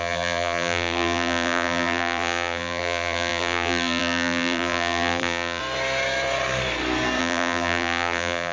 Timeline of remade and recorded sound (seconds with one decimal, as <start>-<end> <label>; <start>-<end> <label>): 0.0-5.6 remade; 5.6-7.2 recorded; 7.2-8.5 remade